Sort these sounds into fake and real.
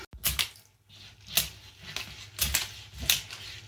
real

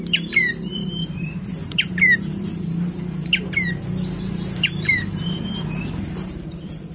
fake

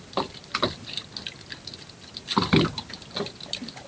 real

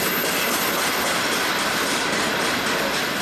real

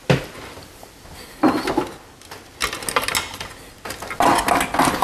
real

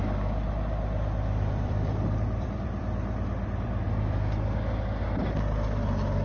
fake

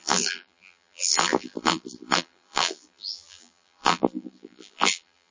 fake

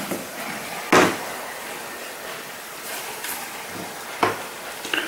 real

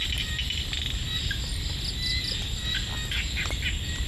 real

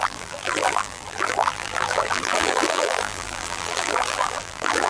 fake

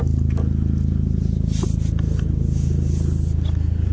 fake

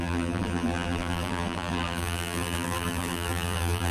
fake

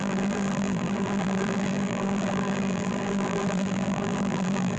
fake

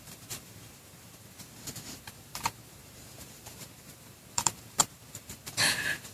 fake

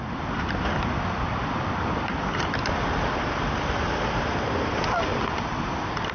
fake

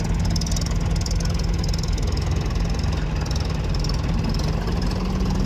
real